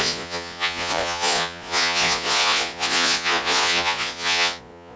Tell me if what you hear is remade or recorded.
remade